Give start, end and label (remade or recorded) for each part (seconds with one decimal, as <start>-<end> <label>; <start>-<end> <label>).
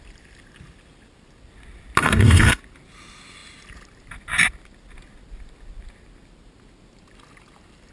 0.0-2.0 recorded; 2.0-2.6 remade; 2.6-7.9 recorded